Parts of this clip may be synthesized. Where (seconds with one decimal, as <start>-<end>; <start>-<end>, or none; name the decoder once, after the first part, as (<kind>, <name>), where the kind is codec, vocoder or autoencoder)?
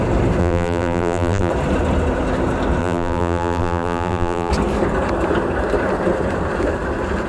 0.4-1.5 (vocoder, BigVGAN v2); 2.8-4.5